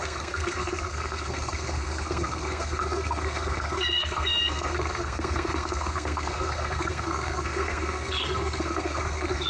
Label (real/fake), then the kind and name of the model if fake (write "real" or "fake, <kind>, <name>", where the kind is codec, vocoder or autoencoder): fake, codec, SNAC